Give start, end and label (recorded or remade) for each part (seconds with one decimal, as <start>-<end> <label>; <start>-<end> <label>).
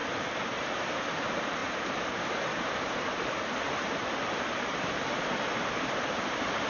0.0-6.7 remade